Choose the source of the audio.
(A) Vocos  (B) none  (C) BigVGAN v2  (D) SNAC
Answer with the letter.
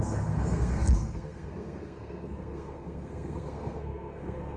D